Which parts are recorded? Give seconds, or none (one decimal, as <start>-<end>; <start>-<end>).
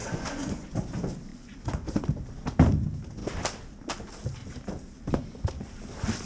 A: 0.7-1.3; 2.0-6.3